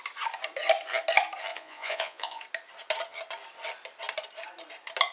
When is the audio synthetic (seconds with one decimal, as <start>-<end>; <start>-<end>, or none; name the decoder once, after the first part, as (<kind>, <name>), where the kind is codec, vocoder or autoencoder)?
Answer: 1.5-2.4 (vocoder, Vocos)